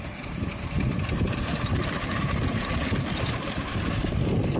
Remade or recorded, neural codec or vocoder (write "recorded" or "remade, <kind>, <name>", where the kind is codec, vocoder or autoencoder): remade, vocoder, BigVGAN v2